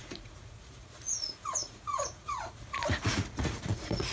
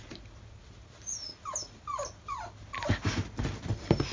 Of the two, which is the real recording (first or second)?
second